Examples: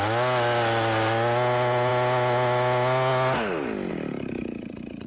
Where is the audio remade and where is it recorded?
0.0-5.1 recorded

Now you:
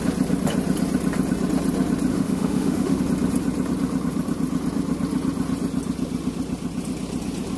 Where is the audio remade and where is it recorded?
0.0-2.1 recorded; 2.1-3.0 remade; 3.0-7.6 recorded